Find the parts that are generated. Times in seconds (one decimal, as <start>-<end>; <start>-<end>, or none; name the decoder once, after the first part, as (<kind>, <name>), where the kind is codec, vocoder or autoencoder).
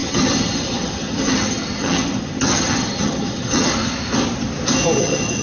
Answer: 0.0-3.7 (vocoder, HiFi-GAN); 5.0-5.4